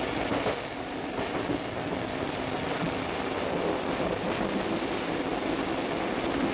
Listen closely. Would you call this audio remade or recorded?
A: recorded